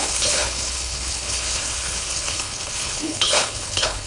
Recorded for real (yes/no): no